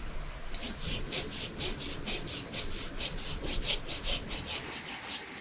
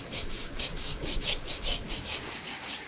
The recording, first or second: first